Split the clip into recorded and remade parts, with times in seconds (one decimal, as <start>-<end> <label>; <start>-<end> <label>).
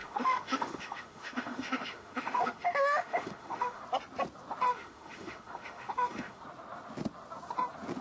0.0-3.8 remade; 3.8-4.7 recorded; 4.7-6.4 remade; 6.4-8.0 recorded